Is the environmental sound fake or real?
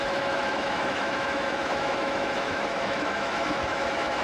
fake